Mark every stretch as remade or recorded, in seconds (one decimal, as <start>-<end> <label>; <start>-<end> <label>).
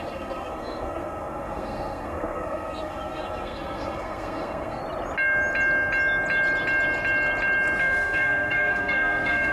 0.0-4.8 remade; 4.8-7.8 recorded; 7.8-9.5 remade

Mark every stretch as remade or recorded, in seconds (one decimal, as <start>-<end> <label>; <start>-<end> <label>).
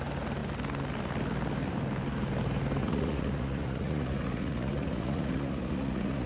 0.0-2.8 recorded; 2.8-6.3 remade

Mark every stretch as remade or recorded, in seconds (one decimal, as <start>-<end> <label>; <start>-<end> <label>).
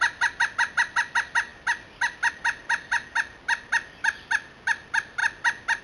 0.0-5.8 recorded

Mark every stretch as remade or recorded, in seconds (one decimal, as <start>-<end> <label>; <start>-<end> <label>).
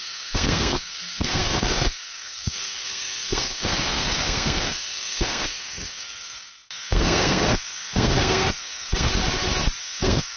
0.0-9.1 remade; 9.1-9.8 recorded; 9.8-10.4 remade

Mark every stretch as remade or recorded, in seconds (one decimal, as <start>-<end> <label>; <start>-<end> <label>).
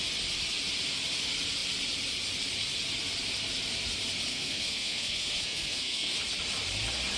0.0-4.3 recorded; 4.3-6.2 remade; 6.2-7.2 recorded